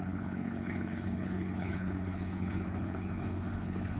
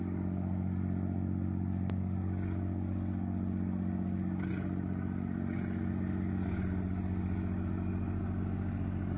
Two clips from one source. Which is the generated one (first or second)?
first